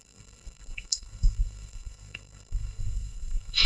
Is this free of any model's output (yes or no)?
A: no